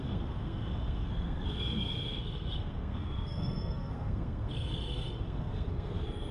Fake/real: fake